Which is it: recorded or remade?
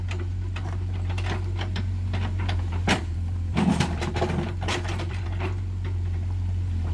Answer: remade